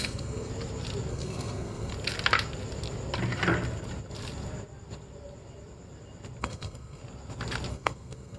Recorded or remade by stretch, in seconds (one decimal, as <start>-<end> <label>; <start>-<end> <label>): 0.0-0.5 remade; 0.5-1.1 recorded; 1.1-1.9 remade; 1.9-6.4 recorded; 6.4-7.0 remade; 7.0-7.7 recorded; 7.7-8.4 remade